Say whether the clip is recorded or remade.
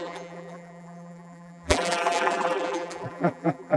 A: remade